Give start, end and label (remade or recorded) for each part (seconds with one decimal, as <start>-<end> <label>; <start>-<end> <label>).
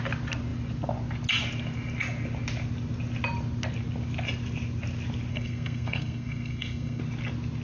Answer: 0.0-5.3 recorded; 5.3-7.0 remade; 7.0-7.6 recorded